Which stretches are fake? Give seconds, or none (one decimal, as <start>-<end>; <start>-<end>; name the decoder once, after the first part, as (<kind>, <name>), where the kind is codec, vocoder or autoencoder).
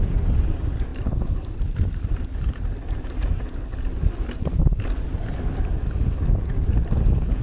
none